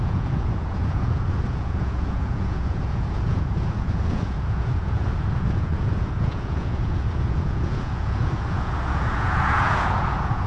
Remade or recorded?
remade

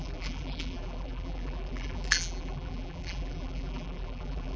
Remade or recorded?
remade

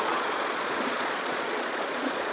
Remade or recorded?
remade